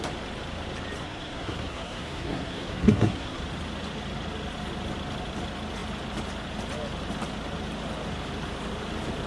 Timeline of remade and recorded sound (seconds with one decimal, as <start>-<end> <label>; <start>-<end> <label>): 0.0-1.0 recorded; 1.0-3.4 remade; 3.4-9.3 recorded